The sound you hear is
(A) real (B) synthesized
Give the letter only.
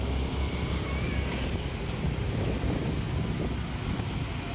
A